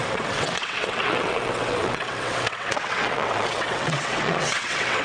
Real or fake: fake